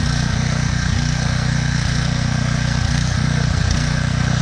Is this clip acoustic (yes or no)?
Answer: no